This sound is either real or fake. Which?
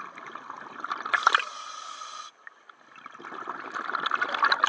real